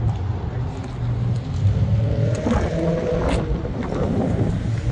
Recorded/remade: recorded